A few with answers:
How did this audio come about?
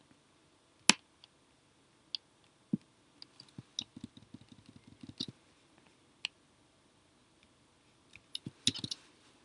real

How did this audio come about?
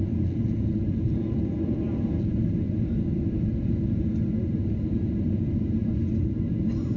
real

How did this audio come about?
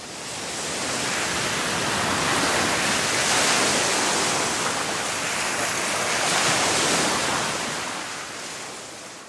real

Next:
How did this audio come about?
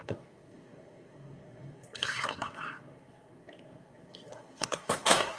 fake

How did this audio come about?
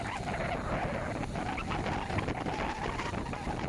real